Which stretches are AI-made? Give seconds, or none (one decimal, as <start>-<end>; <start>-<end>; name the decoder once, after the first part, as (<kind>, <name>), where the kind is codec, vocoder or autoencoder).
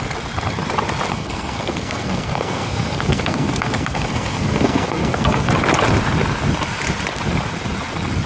1.1-5.5 (codec, SNAC)